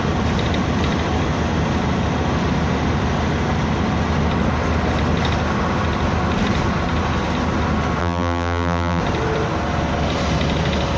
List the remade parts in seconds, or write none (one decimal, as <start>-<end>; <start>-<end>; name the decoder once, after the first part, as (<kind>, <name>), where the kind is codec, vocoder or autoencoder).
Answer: 8.0-9.0 (vocoder, BigVGAN v2)